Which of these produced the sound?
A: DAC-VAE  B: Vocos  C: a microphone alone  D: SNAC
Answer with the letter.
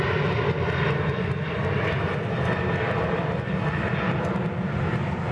C